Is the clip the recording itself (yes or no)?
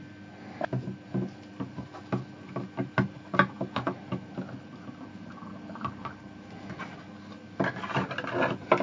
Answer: yes